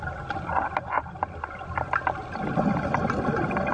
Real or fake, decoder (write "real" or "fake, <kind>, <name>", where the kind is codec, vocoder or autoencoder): real